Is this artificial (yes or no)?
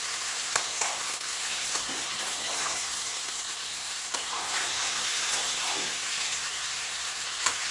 yes